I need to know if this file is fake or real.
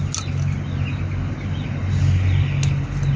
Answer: real